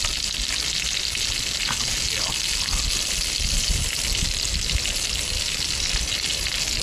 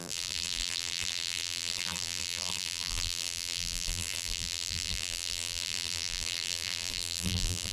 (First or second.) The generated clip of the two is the second